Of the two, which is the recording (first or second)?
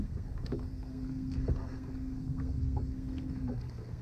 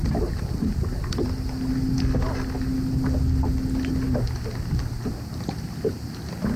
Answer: second